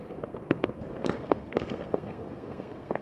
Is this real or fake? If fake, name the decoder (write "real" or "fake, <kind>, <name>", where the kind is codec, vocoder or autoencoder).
fake, codec, SNAC